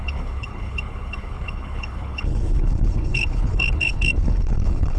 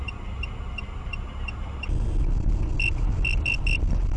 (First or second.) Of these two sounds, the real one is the second